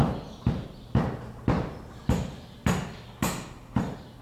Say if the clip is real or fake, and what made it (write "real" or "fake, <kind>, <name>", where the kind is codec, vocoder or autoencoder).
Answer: real